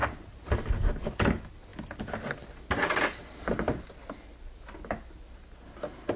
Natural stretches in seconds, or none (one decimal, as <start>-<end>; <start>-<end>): 0.0-6.2